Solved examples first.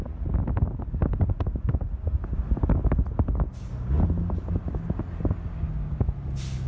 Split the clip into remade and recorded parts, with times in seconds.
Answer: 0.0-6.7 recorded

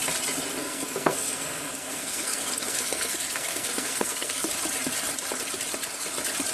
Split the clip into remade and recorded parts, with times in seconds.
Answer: 0.0-0.6 recorded; 0.6-4.5 remade; 4.5-6.5 recorded

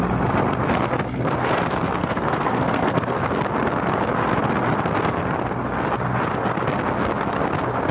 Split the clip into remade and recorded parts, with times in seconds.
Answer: 0.0-2.0 recorded; 2.0-3.2 remade; 3.2-7.9 recorded

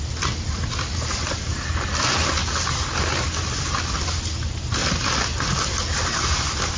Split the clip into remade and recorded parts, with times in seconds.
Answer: 0.0-6.8 recorded

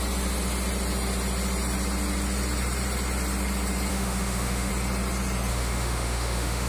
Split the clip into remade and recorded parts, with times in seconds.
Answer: 0.0-3.9 recorded; 3.9-4.7 remade; 4.7-5.5 recorded; 5.5-6.7 remade

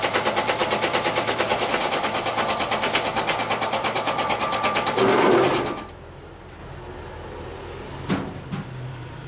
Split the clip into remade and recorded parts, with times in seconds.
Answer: 0.0-6.6 remade; 6.6-8.1 recorded; 8.1-9.3 remade

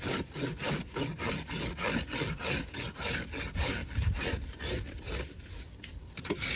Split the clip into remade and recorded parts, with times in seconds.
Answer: 0.0-6.6 recorded

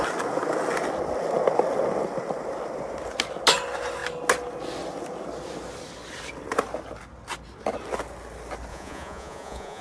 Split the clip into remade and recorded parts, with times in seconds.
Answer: 0.0-8.7 recorded; 8.7-9.8 remade